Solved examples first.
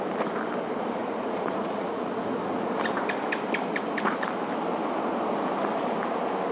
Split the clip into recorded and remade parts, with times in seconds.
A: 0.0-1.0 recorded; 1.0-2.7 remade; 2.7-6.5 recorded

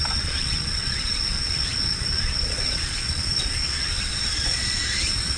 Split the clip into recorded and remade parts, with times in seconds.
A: 0.0-5.4 remade